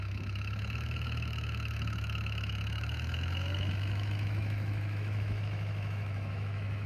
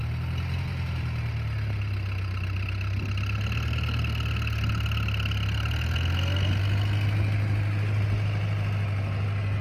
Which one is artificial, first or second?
first